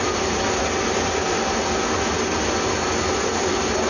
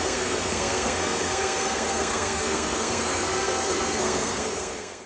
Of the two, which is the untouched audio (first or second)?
first